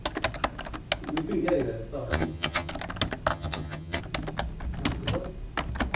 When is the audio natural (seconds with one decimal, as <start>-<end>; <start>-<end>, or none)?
0.0-2.1; 2.7-3.3; 4.0-6.0